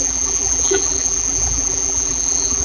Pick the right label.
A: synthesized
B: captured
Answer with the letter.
A